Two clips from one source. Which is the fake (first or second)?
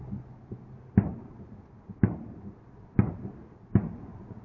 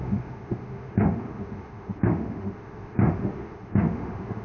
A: second